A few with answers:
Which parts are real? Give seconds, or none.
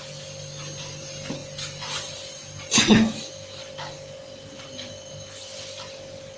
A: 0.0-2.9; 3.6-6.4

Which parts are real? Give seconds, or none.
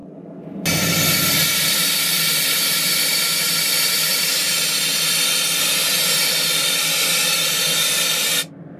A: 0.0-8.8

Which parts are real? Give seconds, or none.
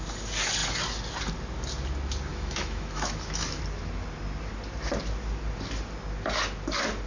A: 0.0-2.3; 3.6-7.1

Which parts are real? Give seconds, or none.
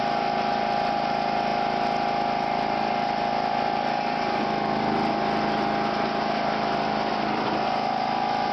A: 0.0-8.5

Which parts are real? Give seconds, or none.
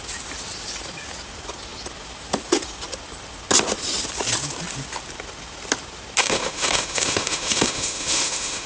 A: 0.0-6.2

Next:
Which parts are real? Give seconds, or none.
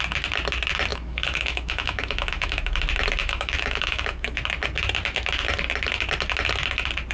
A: 0.0-0.9; 2.8-3.2; 4.4-7.1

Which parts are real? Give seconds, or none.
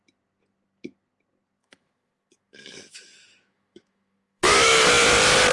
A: 0.0-1.6; 4.9-5.5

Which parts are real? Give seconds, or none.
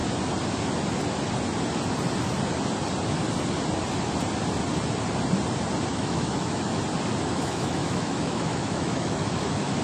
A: 0.0-5.9; 6.8-7.2